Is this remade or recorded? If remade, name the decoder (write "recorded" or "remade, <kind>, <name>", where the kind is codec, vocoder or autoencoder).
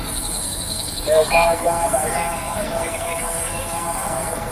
remade, codec, SNAC